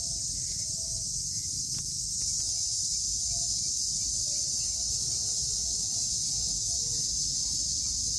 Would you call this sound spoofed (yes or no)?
no